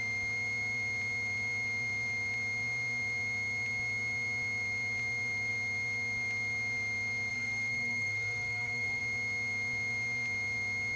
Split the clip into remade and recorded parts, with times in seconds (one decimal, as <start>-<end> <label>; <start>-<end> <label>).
0.0-7.3 recorded; 7.3-9.0 remade; 9.0-11.0 recorded